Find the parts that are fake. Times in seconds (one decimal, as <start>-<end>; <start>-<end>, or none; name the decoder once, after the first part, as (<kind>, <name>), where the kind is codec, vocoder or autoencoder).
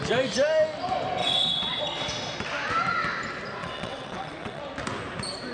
1.2-1.8 (vocoder, WaveNeXt); 3.6-4.6